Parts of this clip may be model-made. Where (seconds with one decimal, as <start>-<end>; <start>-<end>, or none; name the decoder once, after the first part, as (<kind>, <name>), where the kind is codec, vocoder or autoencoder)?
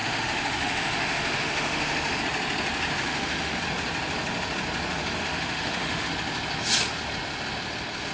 0.0-2.2 (autoencoder, DAC-VAE); 3.0-3.6; 5.2-6.1